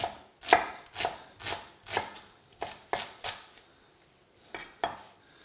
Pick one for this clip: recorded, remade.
recorded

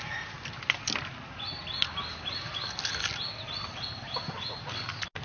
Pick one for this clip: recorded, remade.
recorded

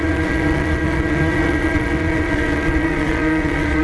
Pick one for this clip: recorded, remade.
remade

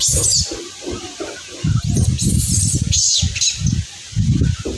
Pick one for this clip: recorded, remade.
recorded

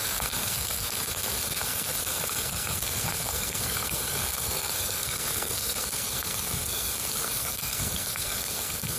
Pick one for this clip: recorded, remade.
remade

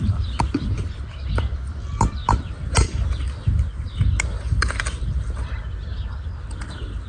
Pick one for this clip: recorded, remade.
recorded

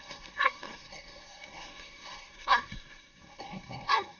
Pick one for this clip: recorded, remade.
remade